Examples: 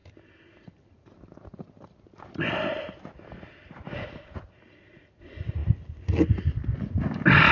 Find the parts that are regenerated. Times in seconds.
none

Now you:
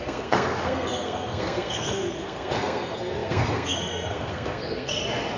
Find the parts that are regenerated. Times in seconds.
0.0-4.9 (codec, SNAC)

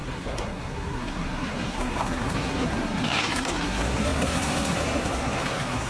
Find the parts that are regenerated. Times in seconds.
0.0-5.9 (codec, SNAC)

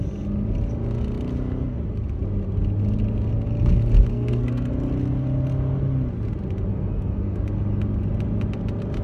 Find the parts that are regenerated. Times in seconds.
4.1-4.7 (codec, SNAC); 6.7-7.4

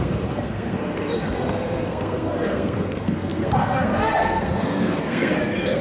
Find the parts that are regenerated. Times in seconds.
0.0-5.8 (codec, SNAC)

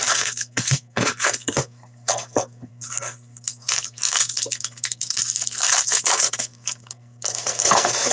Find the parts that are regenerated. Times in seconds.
0.0-8.1 (codec, SNAC)